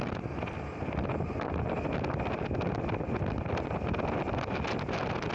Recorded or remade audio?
recorded